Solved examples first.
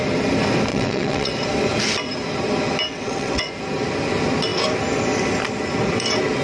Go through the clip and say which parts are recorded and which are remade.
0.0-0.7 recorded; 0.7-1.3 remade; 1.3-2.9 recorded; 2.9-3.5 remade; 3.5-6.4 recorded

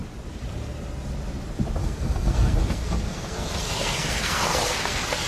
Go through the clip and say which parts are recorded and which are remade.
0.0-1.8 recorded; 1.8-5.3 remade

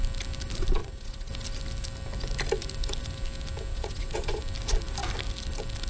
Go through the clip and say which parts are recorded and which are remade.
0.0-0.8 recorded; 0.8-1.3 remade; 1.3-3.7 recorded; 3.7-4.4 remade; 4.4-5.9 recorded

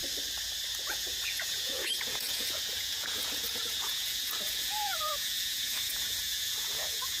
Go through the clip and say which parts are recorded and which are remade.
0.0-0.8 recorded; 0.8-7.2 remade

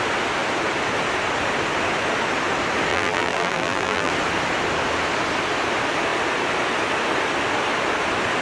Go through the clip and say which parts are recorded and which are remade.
0.0-2.9 recorded; 2.9-4.1 remade; 4.1-8.4 recorded

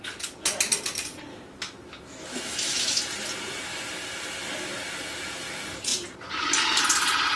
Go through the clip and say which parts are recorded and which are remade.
0.0-1.3 recorded; 1.3-3.0 remade; 3.0-7.4 recorded